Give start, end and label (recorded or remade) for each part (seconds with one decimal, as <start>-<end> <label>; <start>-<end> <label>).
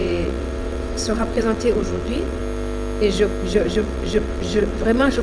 0.0-2.4 remade; 2.4-3.5 recorded; 3.5-5.2 remade